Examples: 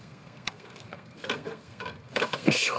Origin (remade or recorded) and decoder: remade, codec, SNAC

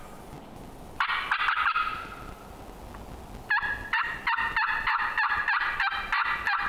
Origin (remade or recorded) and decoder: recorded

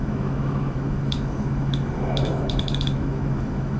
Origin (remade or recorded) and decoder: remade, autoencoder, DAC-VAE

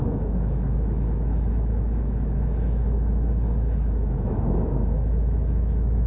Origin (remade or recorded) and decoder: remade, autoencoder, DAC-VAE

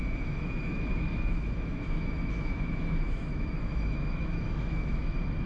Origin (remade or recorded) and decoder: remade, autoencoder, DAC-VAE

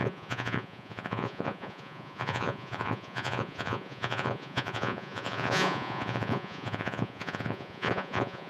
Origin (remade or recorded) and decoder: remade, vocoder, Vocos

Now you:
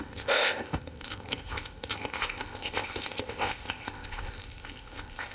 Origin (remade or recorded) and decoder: remade, codec, ZipCodec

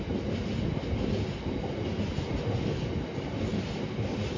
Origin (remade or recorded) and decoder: recorded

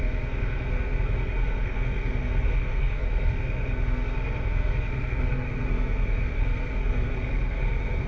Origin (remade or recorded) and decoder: remade, codec, SNAC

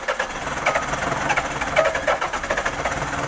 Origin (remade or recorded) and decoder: recorded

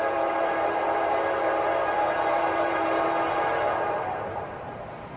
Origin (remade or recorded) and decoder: remade, vocoder, BigVGAN v2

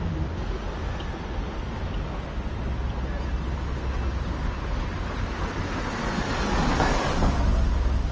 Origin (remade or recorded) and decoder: recorded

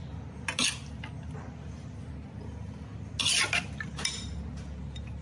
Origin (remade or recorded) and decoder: recorded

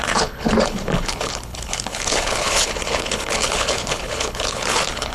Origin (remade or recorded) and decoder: remade, codec, HILCodec